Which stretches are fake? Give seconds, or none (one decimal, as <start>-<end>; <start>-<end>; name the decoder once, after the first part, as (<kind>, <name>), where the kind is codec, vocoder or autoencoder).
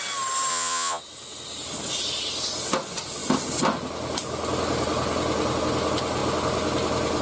0.5-1.0 (vocoder, Vocos)